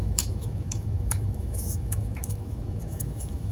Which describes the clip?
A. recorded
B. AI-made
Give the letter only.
B